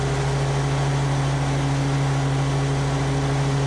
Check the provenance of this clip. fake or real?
real